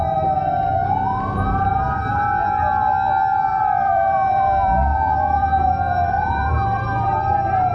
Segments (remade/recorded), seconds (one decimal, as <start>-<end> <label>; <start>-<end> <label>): 0.0-3.5 recorded; 3.5-6.5 remade; 6.5-7.7 recorded